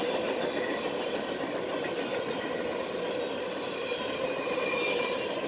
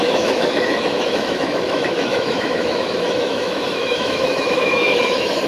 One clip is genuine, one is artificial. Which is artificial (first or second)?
second